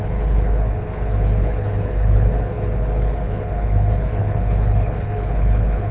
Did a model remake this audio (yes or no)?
yes